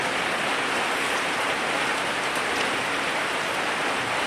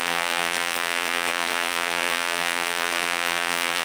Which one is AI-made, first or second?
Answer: second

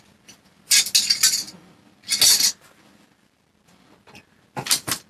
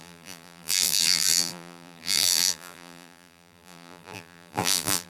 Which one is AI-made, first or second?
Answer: second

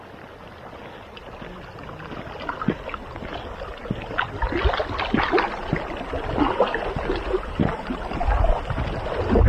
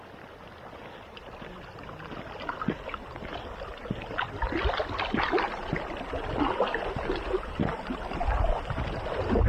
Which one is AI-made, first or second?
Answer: second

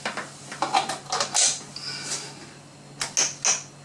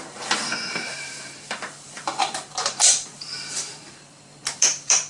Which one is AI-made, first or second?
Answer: second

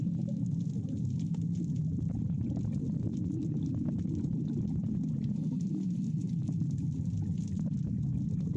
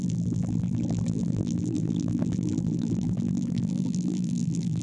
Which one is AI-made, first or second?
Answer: second